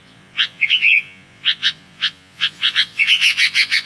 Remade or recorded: remade